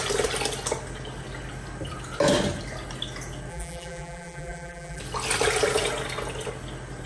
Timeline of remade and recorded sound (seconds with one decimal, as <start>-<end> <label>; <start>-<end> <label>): 0.0-3.5 recorded; 3.5-5.0 remade; 5.0-7.1 recorded